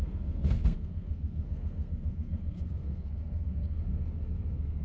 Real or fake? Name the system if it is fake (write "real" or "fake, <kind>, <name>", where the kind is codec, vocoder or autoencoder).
fake, codec, SNAC